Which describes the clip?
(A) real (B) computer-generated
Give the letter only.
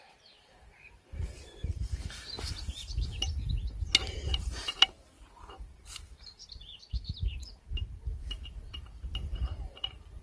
B